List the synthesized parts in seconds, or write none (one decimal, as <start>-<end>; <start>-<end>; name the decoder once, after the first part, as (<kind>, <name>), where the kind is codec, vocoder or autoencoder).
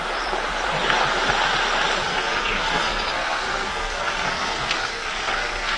2.0-5.8 (codec, SNAC)